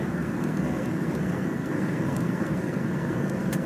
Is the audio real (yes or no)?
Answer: no